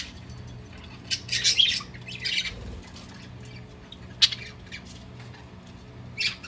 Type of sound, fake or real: real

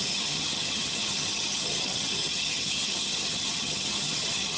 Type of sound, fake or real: fake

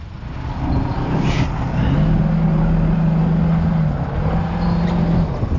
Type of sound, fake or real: real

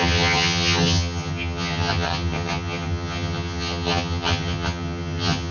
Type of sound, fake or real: fake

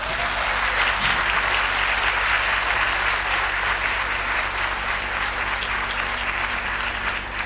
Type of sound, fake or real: real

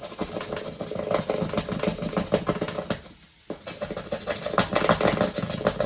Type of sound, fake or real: real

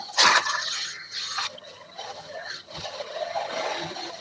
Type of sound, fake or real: fake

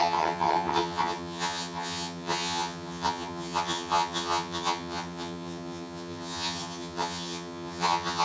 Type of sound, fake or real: fake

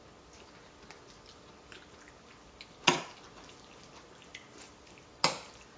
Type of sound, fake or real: real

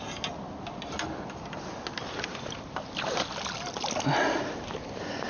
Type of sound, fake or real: real